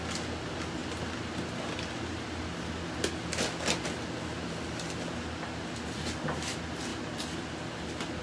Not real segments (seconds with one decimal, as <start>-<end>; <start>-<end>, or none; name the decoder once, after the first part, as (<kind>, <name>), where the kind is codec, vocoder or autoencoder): none